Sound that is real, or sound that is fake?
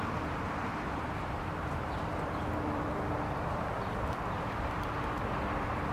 fake